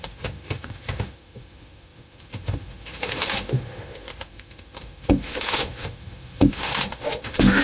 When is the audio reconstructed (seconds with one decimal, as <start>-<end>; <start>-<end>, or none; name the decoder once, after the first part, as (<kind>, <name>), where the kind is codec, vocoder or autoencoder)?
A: 0.0-7.6 (autoencoder, DAC-VAE)